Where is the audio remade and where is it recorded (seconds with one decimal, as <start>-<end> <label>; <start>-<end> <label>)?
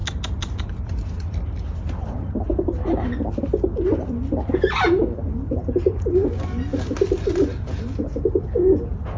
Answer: 0.0-9.2 recorded